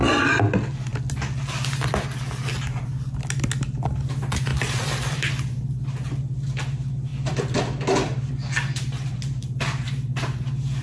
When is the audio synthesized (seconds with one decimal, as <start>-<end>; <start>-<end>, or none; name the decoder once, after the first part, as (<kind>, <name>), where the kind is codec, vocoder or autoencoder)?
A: 4.5-5.3 (vocoder, BigVGAN v2); 7.1-8.3; 9.4-9.9